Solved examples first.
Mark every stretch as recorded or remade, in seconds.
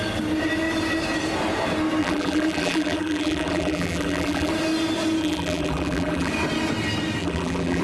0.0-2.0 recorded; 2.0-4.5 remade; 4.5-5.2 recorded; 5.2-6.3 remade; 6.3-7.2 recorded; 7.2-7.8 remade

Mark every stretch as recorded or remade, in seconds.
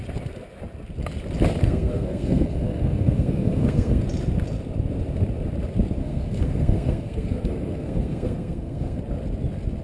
0.0-1.6 recorded; 1.6-4.0 remade; 4.0-6.0 recorded; 6.0-9.0 remade; 9.0-9.8 recorded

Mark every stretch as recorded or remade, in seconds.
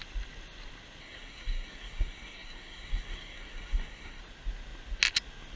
0.0-1.0 recorded; 1.0-4.2 remade; 4.2-5.6 recorded